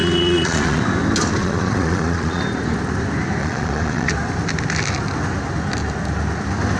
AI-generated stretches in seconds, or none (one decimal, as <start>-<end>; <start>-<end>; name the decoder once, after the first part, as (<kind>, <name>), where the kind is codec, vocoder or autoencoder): 0.0-0.8 (vocoder, Vocos); 1.4-2.4; 3.4-4.1